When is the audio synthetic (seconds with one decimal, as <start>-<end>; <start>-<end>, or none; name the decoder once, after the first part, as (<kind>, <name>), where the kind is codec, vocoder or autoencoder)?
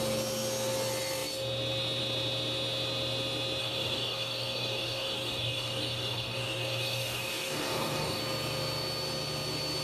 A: 3.6-8.2 (codec, DAC)